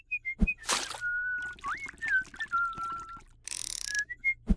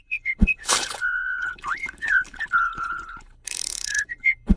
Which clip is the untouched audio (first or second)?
first